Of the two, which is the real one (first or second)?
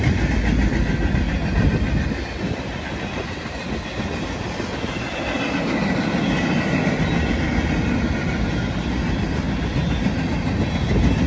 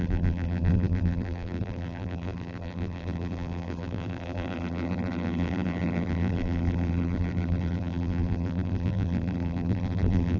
first